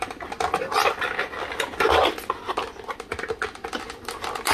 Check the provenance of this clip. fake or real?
real